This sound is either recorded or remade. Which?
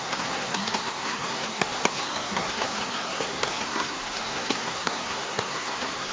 remade